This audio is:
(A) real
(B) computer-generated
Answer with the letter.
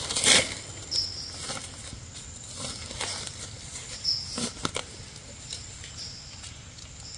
A